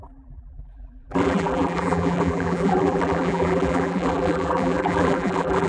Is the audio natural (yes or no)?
no